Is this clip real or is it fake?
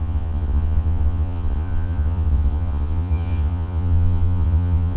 fake